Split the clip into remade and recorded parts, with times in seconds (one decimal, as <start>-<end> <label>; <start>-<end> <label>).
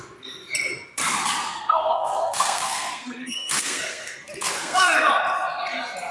0.0-1.4 recorded; 1.4-5.1 remade; 5.1-6.1 recorded